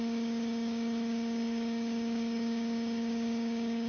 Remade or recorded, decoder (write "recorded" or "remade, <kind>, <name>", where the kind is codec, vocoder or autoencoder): remade, codec, DAC